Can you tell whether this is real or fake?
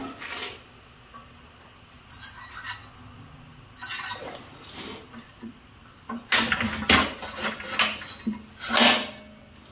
real